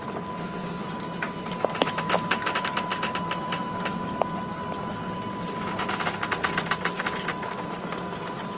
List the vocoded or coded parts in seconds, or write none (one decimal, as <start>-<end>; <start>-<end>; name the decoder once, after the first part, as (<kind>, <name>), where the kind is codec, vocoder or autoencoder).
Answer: none